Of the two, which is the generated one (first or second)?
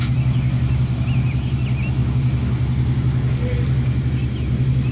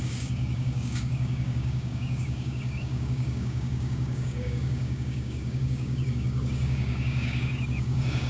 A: second